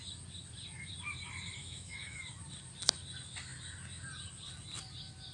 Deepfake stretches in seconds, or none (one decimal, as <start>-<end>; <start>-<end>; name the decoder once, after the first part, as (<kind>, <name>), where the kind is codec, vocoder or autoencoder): 1.6-2.2 (autoencoder, DAC-VAE)